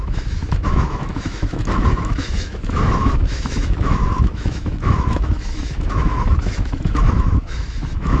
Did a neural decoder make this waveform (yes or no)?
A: yes